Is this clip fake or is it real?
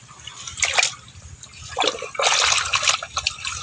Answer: real